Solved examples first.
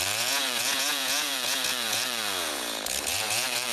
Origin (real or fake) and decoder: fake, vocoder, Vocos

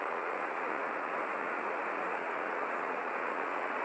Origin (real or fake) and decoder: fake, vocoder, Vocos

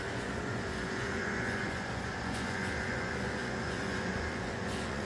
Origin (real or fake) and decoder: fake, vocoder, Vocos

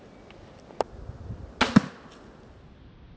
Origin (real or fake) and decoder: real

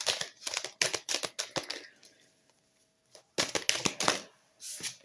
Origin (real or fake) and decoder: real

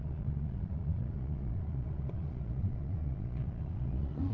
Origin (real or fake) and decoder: fake, vocoder, Vocos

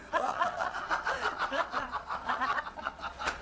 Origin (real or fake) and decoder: fake, vocoder, Vocos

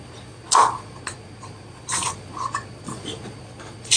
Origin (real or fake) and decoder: fake, vocoder, Vocos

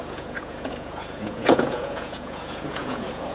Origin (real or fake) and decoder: fake, vocoder, Vocos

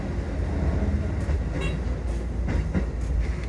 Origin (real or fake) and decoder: real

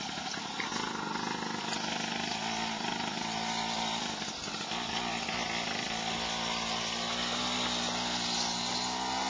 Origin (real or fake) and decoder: real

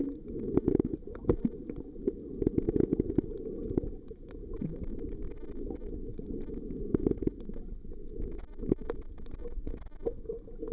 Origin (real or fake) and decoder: real